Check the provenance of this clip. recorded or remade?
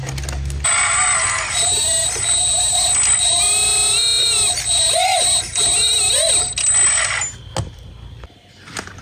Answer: recorded